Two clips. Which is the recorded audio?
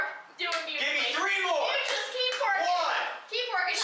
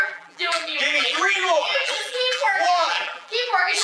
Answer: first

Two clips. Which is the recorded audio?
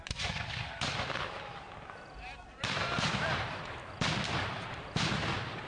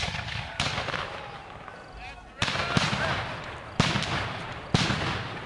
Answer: second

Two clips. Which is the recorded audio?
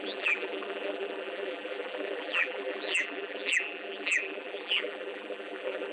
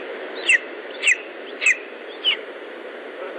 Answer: second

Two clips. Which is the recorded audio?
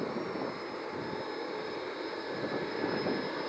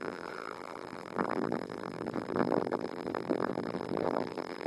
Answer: first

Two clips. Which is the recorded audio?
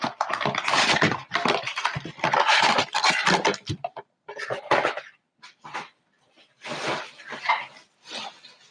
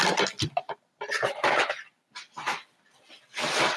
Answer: second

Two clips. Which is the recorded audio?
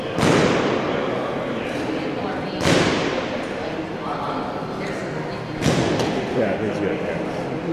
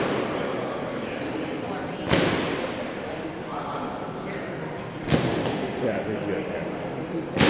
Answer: first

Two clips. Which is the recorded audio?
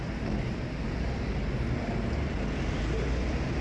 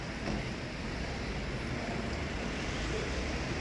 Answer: first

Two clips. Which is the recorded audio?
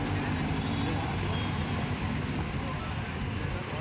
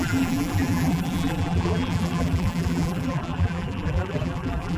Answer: first